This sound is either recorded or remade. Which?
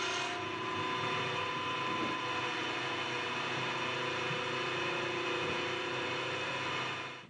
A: recorded